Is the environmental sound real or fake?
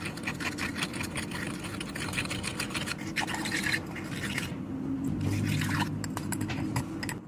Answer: real